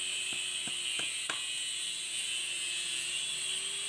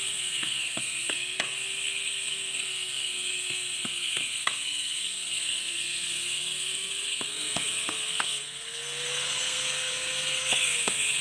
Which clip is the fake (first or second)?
second